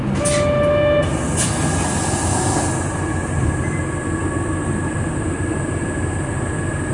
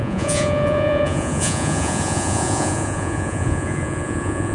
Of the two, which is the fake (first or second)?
second